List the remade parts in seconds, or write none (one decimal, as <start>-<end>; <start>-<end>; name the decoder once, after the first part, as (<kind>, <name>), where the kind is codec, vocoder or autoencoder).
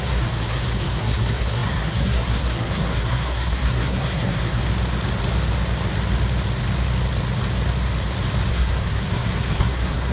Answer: 0.0-4.6 (codec, SNAC); 8.5-10.1